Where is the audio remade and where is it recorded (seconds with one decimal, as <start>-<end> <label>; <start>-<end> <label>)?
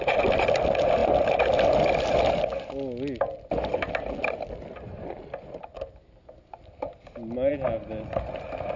0.0-8.8 recorded